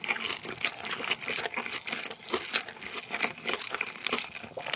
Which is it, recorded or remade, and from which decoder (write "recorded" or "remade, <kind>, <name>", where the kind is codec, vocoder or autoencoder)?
recorded